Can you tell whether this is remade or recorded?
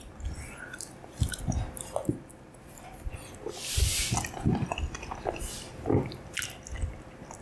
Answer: recorded